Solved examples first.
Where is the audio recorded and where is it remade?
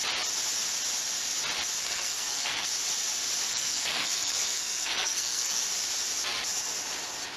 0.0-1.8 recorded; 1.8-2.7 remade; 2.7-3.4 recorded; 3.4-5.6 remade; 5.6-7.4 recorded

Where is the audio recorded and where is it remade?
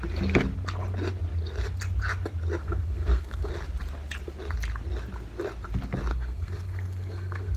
0.0-2.6 recorded; 2.6-3.5 remade; 3.5-6.1 recorded; 6.1-7.6 remade